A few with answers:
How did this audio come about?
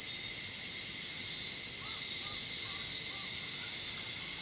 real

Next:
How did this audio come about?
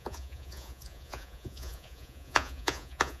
fake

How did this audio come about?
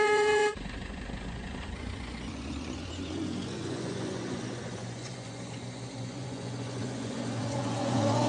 fake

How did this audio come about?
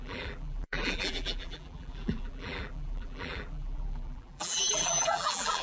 fake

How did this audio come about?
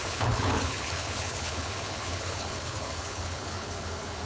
fake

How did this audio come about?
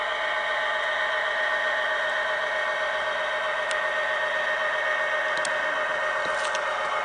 real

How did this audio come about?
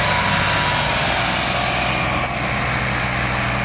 real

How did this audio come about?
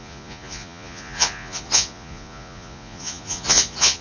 fake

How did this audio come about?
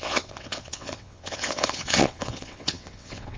fake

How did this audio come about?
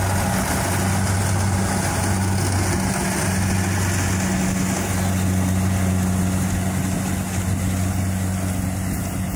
real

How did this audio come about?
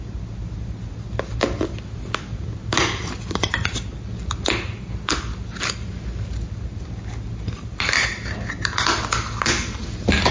real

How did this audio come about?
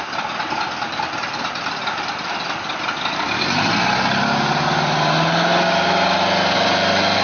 real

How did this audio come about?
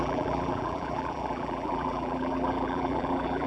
fake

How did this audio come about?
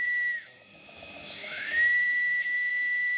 fake